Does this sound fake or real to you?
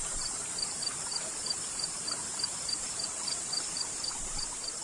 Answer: fake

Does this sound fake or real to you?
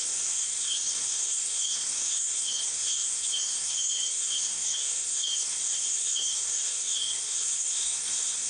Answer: fake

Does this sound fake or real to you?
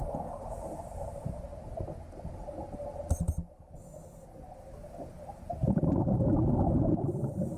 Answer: real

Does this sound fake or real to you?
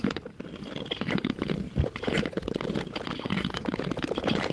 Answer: fake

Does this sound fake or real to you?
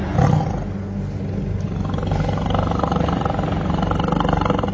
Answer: real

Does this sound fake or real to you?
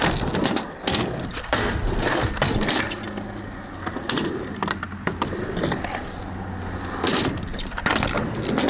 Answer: real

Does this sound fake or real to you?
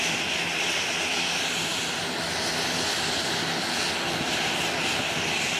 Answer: real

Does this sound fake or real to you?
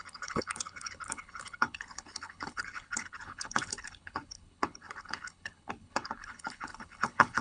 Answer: fake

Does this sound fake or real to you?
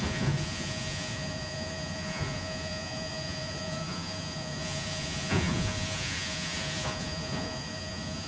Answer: fake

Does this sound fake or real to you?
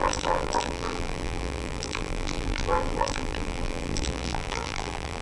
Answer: fake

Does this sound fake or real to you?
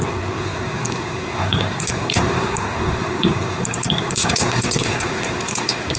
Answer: fake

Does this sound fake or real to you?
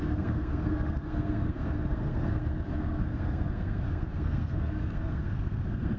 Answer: fake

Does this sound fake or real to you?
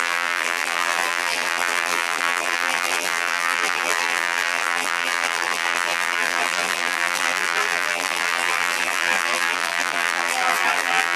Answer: fake